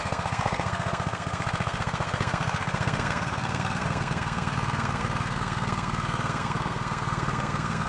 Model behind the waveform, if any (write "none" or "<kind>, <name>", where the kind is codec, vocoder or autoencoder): codec, SNAC